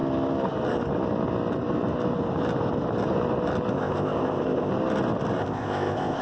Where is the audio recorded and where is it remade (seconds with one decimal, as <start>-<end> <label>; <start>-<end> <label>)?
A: 0.0-3.7 recorded; 3.7-4.7 remade; 4.7-5.4 recorded; 5.4-6.2 remade